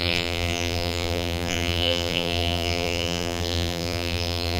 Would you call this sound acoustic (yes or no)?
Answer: no